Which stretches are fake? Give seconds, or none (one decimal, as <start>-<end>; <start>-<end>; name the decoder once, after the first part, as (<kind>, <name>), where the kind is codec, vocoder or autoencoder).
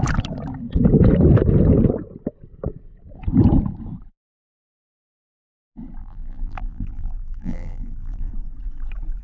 6.0-8.3 (vocoder, BigVGAN v2)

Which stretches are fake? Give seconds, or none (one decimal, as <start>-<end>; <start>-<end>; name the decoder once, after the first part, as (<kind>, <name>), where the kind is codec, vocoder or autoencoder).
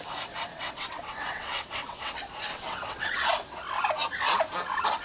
0.5-2.1 (vocoder, WaveNeXt); 2.5-3.3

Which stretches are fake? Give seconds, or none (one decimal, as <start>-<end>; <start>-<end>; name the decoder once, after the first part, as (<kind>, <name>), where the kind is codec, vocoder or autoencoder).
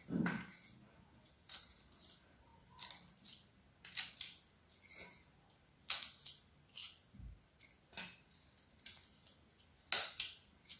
none